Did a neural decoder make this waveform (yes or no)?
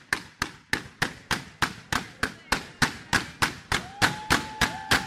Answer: no